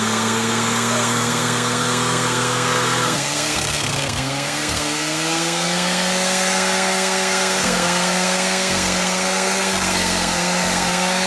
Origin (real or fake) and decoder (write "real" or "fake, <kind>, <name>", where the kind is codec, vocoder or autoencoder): fake, codec, SNAC